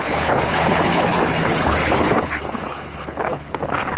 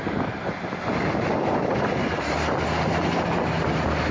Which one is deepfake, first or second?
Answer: first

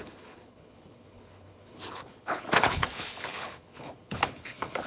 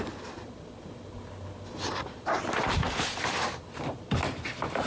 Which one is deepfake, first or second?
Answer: first